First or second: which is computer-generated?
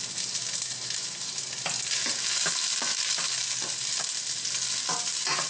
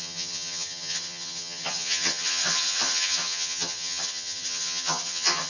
second